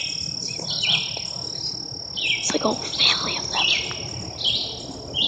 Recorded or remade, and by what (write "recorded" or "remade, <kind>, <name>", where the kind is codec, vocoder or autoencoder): recorded